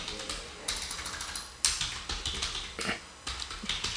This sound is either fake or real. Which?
real